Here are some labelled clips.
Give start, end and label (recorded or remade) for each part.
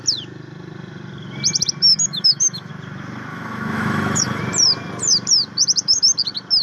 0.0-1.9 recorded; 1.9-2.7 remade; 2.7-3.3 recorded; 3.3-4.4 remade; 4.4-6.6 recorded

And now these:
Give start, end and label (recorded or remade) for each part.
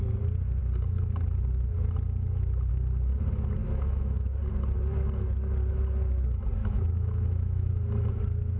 0.0-3.6 recorded; 3.6-4.4 remade; 4.4-6.6 recorded; 6.6-7.7 remade; 7.7-8.6 recorded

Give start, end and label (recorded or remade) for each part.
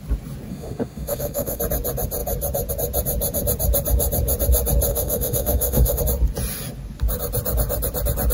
0.0-0.5 recorded; 0.5-1.6 remade; 1.6-4.9 recorded; 4.9-6.0 remade; 6.0-8.3 recorded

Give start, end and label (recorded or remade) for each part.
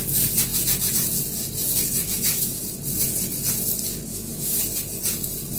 0.0-2.0 recorded; 2.0-2.6 remade; 2.6-4.1 recorded; 4.1-4.6 remade; 4.6-5.6 recorded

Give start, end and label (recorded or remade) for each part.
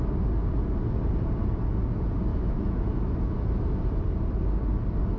0.0-2.3 recorded; 2.3-3.8 remade; 3.8-5.2 recorded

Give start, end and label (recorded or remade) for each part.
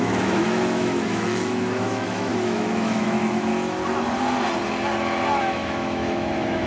0.0-3.5 remade; 3.5-5.4 recorded; 5.4-6.7 remade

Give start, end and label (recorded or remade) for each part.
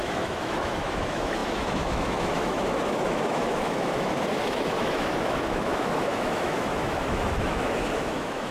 0.0-8.5 remade